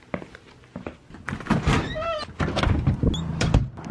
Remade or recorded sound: recorded